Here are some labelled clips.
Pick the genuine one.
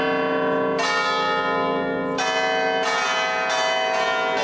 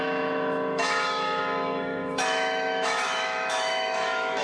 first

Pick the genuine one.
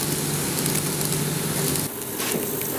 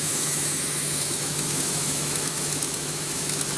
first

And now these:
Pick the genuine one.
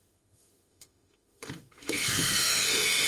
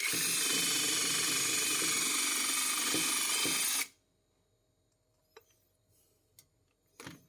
second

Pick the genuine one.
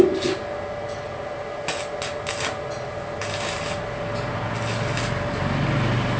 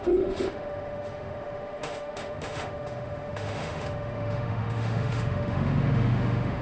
first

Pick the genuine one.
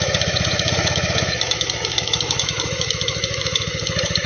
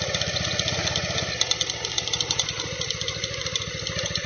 second